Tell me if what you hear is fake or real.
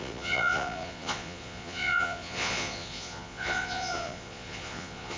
fake